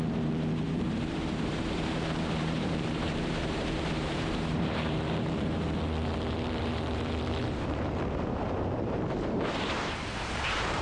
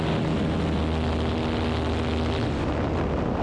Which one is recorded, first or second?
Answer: second